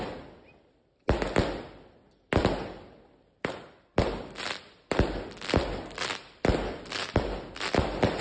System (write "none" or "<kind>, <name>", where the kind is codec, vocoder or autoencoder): none